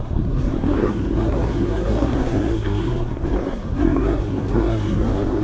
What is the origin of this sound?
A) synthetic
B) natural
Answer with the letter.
A